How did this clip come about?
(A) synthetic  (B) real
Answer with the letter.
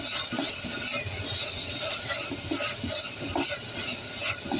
B